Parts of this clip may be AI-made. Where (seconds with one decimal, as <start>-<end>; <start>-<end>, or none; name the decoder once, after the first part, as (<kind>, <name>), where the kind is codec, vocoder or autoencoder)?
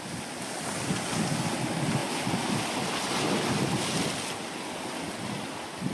2.0-3.1 (vocoder, BigVGAN v2)